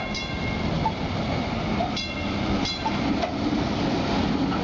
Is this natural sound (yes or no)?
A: yes